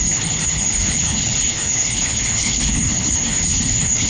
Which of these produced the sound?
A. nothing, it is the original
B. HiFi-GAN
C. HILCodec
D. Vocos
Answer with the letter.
C